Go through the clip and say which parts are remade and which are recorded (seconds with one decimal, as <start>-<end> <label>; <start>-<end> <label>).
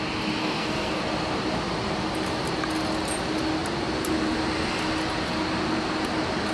0.0-0.4 recorded; 0.4-1.0 remade; 1.0-6.5 recorded